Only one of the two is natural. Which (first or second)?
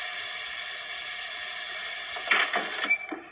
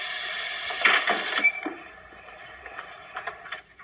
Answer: first